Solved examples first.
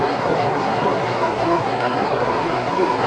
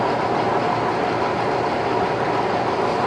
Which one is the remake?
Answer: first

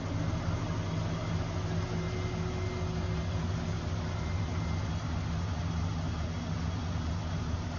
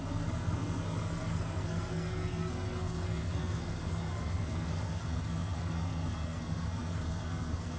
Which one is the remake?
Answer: second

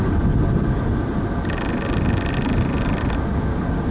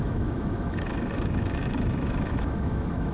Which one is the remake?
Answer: second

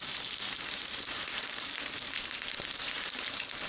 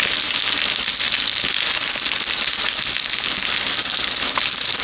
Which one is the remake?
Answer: first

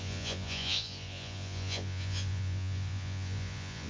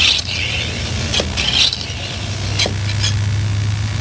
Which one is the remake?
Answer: first